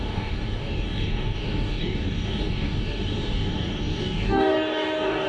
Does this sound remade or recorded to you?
remade